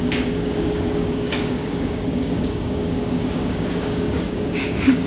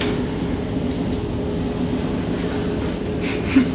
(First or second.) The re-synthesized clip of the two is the first